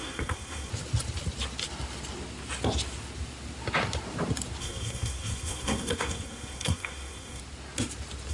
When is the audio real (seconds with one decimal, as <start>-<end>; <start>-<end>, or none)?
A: 0.7-4.6; 7.4-8.3